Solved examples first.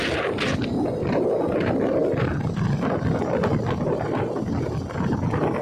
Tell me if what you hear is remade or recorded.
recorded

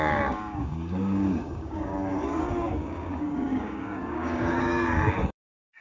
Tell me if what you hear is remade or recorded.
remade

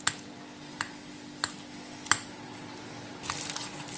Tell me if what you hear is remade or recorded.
recorded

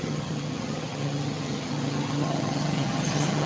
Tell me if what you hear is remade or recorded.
remade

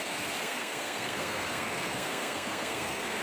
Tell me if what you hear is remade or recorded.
remade